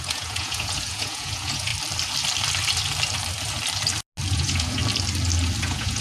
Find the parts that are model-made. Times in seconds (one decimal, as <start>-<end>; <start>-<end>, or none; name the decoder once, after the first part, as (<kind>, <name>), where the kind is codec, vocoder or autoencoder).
0.0-1.7 (vocoder, Vocos); 4.3-4.8; 5.6-6.0